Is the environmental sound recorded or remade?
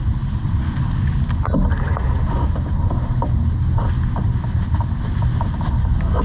recorded